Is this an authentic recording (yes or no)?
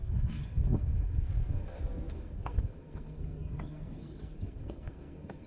no